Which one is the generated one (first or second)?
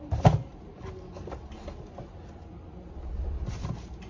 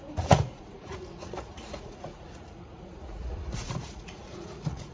second